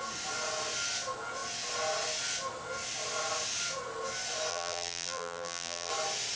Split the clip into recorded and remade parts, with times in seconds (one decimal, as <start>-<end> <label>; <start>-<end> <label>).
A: 0.0-4.5 recorded; 4.5-5.9 remade; 5.9-6.4 recorded